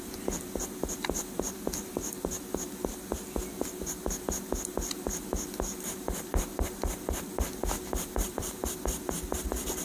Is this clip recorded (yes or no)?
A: no